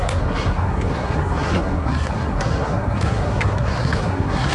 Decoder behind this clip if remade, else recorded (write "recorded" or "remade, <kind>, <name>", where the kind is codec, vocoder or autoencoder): remade, codec, SNAC